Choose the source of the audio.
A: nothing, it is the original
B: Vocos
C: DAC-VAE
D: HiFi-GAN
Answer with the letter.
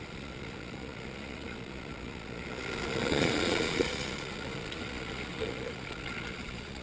B